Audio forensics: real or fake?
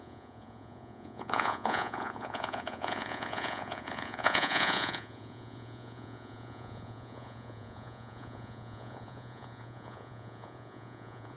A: fake